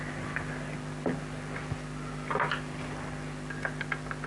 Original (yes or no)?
yes